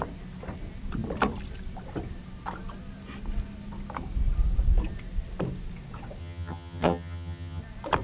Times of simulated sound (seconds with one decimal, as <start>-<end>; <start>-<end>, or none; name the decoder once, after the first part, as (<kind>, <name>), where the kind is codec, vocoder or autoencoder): 6.2-7.6 (vocoder, HiFi-GAN)